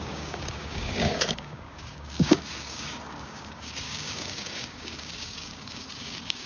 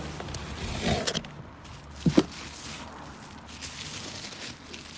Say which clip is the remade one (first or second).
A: first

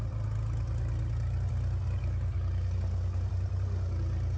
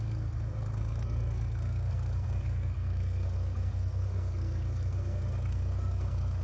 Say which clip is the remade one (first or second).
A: second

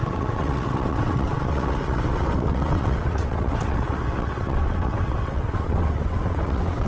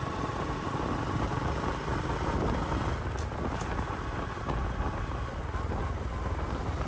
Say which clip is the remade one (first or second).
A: first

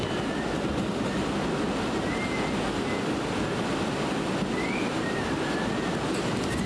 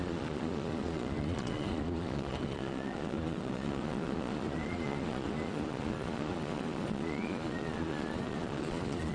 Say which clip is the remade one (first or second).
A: second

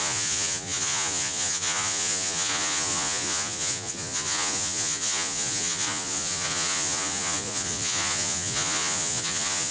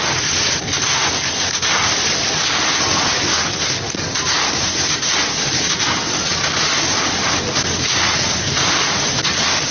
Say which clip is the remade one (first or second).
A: first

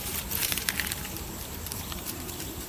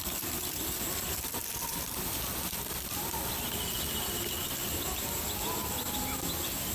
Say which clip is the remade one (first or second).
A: first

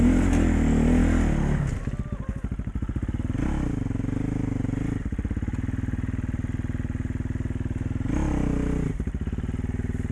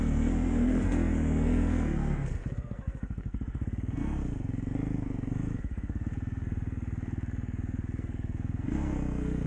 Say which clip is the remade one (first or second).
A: second